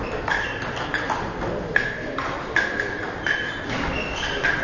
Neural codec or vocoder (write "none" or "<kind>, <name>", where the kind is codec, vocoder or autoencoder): vocoder, BigVGAN v2